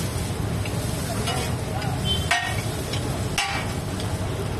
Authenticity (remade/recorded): recorded